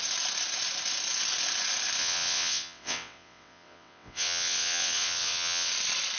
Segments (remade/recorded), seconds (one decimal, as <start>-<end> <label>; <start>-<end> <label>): 0.0-2.0 recorded; 2.0-5.7 remade; 5.7-6.2 recorded

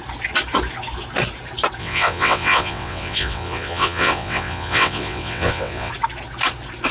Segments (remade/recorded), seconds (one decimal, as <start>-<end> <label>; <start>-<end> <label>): 0.0-1.8 recorded; 1.8-5.9 remade; 5.9-6.9 recorded